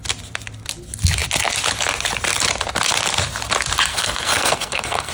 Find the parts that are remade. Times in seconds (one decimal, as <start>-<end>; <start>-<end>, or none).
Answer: 3.9-5.1